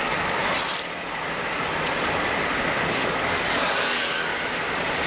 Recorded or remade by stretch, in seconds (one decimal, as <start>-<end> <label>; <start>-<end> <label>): 0.0-0.4 remade; 0.4-2.9 recorded; 2.9-4.3 remade; 4.3-5.1 recorded